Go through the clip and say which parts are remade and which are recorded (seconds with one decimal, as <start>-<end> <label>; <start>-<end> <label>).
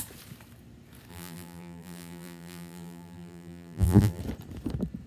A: 0.0-1.1 recorded; 1.1-4.2 remade; 4.2-5.1 recorded